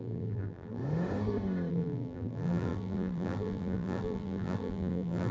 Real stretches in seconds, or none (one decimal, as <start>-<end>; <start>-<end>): 0.8-1.7